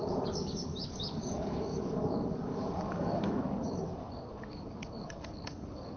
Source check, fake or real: fake